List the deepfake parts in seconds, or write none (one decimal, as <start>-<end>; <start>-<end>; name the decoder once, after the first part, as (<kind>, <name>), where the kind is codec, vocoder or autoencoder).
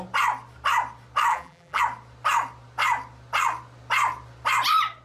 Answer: 1.3-1.8 (vocoder, BigVGAN v2)